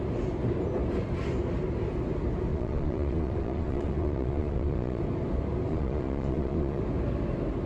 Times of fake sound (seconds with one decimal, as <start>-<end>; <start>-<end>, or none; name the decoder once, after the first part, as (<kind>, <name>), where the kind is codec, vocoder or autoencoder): 2.5-5.0 (vocoder, Vocos); 5.7-6.8